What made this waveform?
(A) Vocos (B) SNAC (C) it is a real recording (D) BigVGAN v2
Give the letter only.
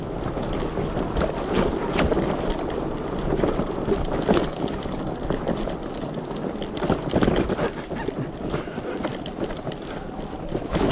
C